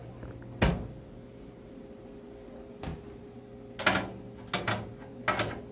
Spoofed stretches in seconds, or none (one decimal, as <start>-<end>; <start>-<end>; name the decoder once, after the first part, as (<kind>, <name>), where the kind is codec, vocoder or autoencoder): none